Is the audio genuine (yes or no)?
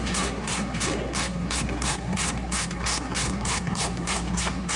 no